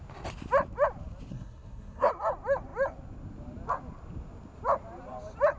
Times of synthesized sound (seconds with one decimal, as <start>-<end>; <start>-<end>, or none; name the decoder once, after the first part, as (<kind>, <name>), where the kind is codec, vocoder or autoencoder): 1.3-2.1 (codec, SNAC)

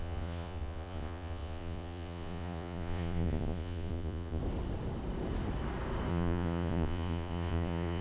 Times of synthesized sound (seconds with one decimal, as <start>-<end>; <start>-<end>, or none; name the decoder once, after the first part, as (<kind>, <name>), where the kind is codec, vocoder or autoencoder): 0.0-4.4 (vocoder, Vocos); 6.1-8.0

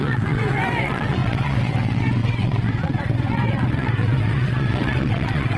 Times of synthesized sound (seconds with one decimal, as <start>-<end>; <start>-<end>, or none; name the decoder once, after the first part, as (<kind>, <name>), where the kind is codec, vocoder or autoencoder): 0.0-5.6 (vocoder, WaveNeXt)

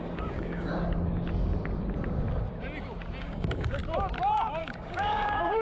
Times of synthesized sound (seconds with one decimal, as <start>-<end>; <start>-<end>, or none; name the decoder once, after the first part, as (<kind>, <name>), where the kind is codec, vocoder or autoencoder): 0.0-0.7 (codec, DAC); 3.2-3.8; 4.6-5.6

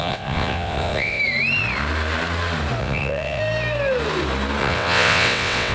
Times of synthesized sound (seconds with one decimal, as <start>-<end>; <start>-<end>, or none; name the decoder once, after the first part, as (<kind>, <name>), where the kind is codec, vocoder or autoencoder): 0.0-1.2 (vocoder, WaveNeXt); 2.8-3.4; 4.6-5.7